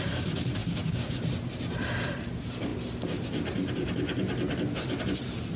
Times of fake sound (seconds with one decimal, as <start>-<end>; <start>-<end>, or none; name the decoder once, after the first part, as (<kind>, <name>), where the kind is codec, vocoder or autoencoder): 0.6-1.2 (codec, DAC)